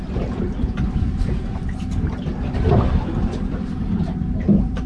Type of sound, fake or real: real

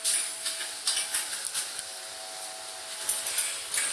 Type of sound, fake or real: real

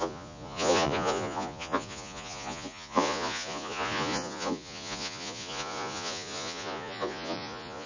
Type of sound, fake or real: fake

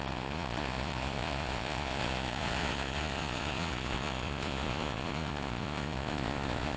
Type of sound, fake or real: fake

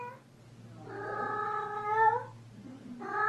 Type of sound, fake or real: real